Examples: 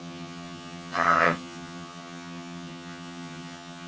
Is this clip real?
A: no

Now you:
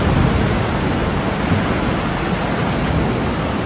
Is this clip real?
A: yes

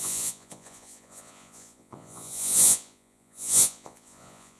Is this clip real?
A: no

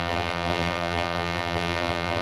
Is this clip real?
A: no